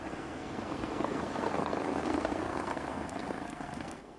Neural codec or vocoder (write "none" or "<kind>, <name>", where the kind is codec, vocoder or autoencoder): codec, SNAC